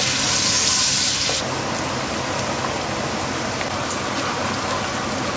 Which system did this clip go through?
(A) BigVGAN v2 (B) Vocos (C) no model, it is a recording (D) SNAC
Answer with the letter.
C